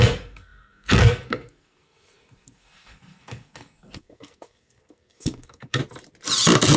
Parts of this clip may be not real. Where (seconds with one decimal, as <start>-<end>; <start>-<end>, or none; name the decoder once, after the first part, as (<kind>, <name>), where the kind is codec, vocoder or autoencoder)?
0.0-5.8 (codec, SNAC)